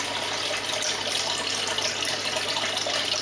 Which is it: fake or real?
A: real